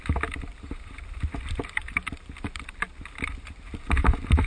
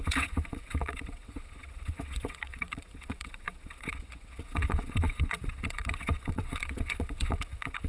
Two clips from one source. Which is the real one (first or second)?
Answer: first